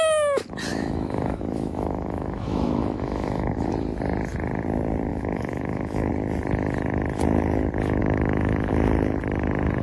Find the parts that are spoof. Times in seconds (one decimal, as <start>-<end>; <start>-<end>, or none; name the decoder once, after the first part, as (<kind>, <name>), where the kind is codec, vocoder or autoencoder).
0.7-3.7 (autoencoder, DAC-VAE); 5.1-6.1; 8.0-8.7